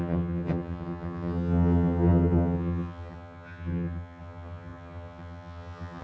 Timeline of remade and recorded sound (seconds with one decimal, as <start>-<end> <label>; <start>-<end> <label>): 0.0-6.0 remade